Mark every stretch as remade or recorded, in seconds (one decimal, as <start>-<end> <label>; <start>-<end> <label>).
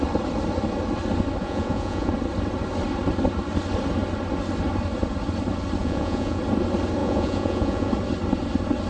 0.0-1.4 recorded; 1.4-2.1 remade; 2.1-5.8 recorded; 5.8-6.4 remade; 6.4-7.0 recorded; 7.0-7.9 remade; 7.9-8.9 recorded